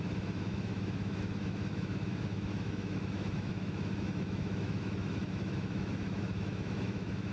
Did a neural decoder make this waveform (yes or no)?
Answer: yes